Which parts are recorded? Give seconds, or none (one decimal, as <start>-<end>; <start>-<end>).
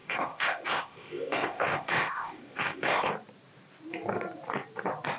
3.1-5.2